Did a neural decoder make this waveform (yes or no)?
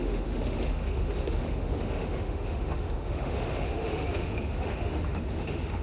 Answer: yes